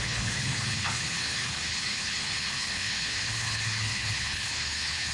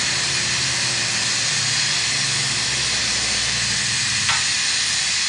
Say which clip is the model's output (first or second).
first